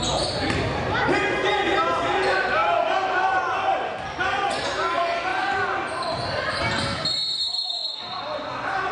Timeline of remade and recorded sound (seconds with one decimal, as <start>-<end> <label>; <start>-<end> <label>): 0.0-7.4 recorded; 7.4-8.0 remade; 8.0-8.9 recorded